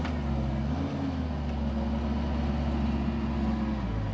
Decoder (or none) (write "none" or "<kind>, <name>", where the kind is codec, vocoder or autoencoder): none